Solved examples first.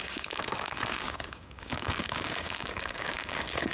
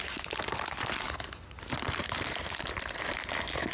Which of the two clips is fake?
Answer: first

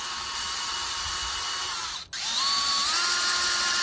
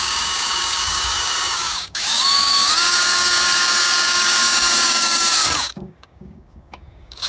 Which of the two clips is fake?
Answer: second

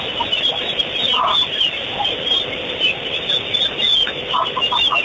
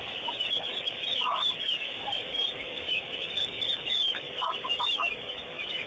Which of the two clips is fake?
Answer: second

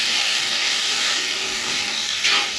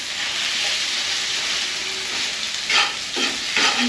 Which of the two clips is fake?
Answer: first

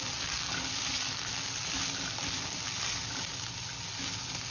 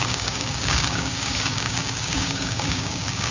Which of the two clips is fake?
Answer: second